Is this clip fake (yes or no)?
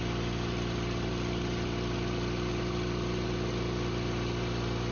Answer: no